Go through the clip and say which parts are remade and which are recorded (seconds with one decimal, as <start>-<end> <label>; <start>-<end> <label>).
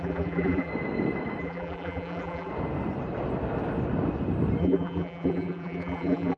0.0-0.7 remade; 0.7-1.4 recorded; 1.4-2.5 remade; 2.5-4.6 recorded; 4.6-6.4 remade